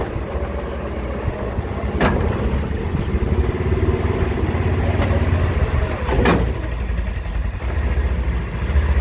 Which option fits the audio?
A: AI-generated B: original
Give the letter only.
B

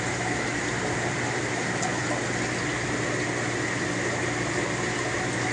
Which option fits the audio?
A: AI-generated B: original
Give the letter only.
B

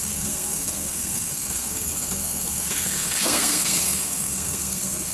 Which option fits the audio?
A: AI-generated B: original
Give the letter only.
A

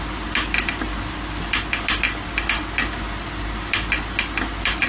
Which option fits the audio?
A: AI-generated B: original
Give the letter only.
B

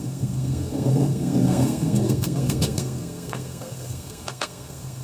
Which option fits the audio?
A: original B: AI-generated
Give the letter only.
B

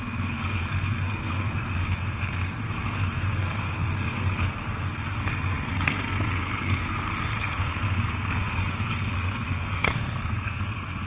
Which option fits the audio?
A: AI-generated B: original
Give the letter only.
A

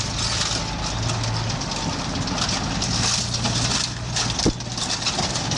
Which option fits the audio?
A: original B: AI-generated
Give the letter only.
A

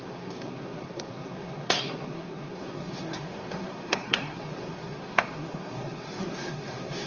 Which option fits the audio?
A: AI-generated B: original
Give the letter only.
A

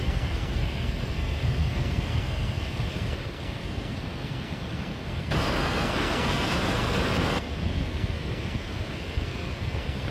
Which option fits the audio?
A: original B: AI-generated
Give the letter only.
B